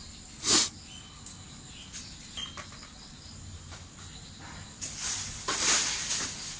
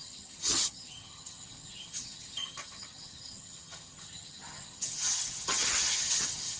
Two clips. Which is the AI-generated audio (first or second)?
second